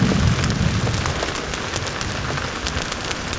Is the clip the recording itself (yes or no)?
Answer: yes